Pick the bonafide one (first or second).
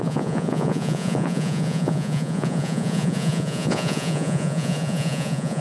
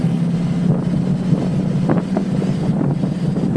second